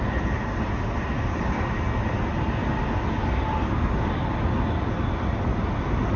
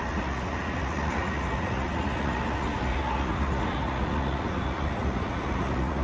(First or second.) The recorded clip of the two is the first